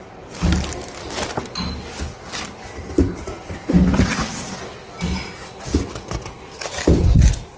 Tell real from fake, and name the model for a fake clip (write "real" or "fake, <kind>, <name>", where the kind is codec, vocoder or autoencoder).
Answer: real